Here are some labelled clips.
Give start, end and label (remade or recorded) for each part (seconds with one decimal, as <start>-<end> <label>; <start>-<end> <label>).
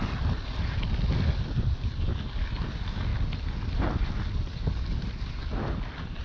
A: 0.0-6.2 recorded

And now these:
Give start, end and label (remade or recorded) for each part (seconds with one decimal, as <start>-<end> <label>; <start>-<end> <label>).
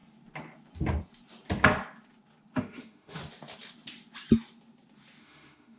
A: 0.0-2.6 recorded; 2.6-3.2 remade; 3.2-5.2 recorded; 5.2-5.8 remade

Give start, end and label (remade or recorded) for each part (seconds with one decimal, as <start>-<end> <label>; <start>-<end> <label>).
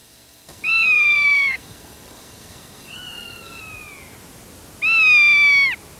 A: 0.0-3.6 remade; 3.6-6.0 recorded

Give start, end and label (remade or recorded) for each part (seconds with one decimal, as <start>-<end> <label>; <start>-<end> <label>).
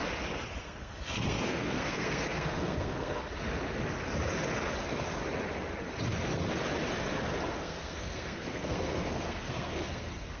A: 0.0-0.6 recorded; 0.6-3.2 remade; 3.2-7.5 recorded; 7.5-10.4 remade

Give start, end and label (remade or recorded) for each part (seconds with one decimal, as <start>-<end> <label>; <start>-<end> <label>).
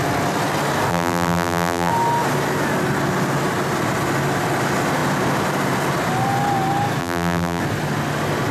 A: 0.0-0.9 recorded; 0.9-1.9 remade; 1.9-7.0 recorded; 7.0-7.6 remade; 7.6-8.5 recorded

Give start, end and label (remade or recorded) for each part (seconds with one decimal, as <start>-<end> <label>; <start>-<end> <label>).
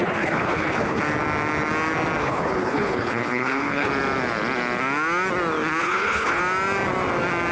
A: 0.0-1.0 remade; 1.0-2.2 recorded; 2.2-3.9 remade; 3.9-5.8 recorded; 5.8-6.4 remade; 6.4-7.5 recorded